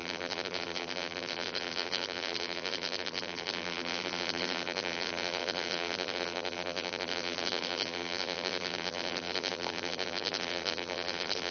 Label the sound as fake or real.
fake